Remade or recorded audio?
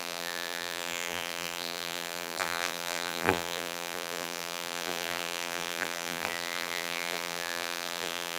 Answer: remade